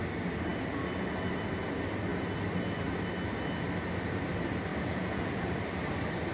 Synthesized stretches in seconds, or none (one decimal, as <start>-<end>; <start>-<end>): 4.7-5.5